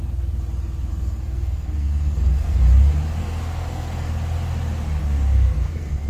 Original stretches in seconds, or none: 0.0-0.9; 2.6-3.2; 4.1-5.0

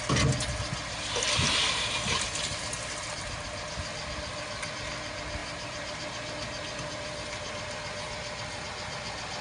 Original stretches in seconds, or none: 0.0-9.4

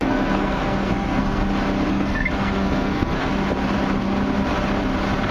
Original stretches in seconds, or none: 1.4-1.9; 3.3-5.3

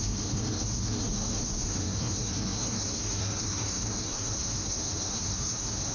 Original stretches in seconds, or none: none

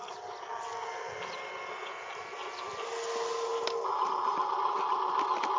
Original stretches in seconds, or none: 0.0-5.6

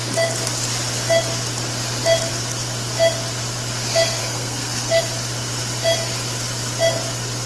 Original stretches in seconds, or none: 0.0-4.2; 5.0-7.5

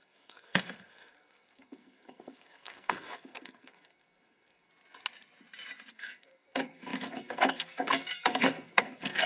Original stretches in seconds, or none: 4.7-5.9